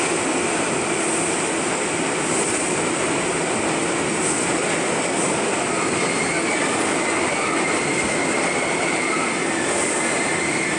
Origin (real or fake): real